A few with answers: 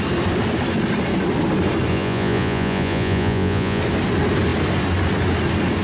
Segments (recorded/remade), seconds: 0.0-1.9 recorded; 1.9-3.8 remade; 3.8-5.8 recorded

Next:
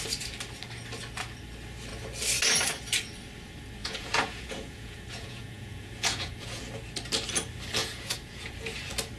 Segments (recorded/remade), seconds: 0.0-3.8 recorded; 3.8-6.6 remade; 6.6-7.8 recorded; 7.8-8.5 remade; 8.5-9.2 recorded

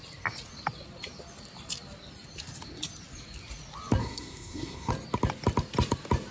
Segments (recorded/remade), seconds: 0.0-4.0 recorded; 4.0-4.9 remade; 4.9-6.3 recorded

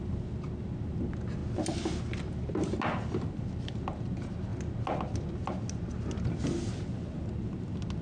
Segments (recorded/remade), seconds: 0.0-8.0 recorded

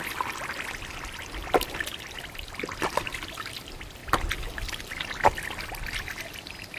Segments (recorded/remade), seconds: 0.0-6.8 recorded

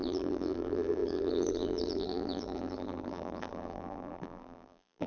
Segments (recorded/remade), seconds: 0.0-5.1 remade